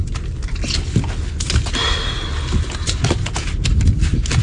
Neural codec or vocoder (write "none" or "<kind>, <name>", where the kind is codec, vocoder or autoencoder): none